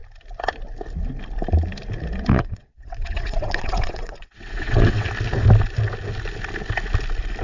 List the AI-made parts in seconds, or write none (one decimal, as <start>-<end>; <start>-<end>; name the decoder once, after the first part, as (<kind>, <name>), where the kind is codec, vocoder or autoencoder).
2.3-5.1 (vocoder, WaveNeXt)